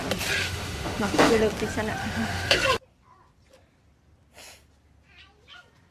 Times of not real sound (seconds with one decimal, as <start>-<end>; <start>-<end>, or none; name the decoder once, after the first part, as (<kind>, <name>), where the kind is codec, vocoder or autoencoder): 0.4-1.4 (autoencoder, DAC-VAE); 2.0-2.6